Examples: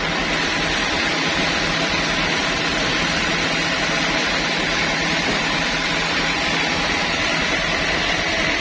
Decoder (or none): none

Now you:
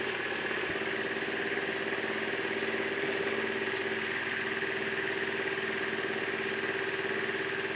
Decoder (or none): none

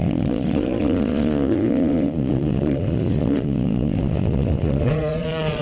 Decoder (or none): vocoder, Vocos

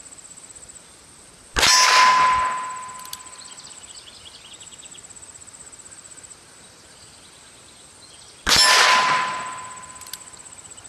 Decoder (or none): none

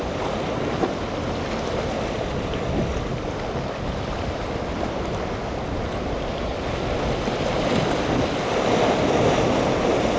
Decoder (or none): none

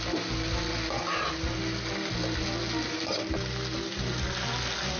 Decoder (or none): none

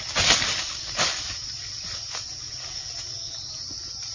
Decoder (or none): none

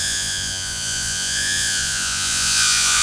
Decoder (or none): vocoder, Vocos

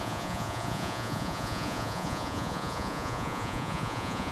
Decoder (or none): vocoder, Vocos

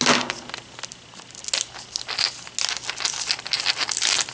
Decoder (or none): none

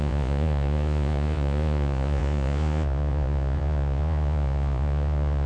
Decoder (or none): vocoder, Vocos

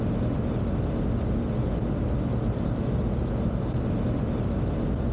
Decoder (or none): none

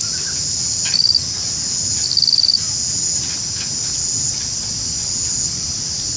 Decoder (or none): none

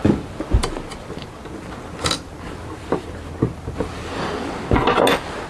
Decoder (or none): none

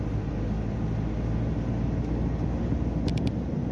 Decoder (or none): none